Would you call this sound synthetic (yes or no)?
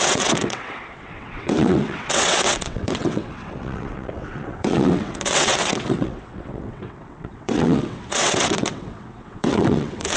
yes